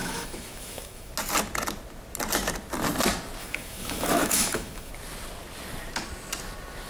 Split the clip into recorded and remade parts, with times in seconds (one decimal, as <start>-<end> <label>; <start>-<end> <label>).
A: 0.0-1.1 remade; 1.1-3.4 recorded; 3.4-4.9 remade; 4.9-6.9 recorded